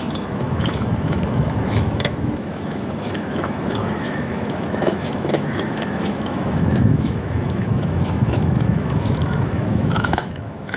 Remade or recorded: remade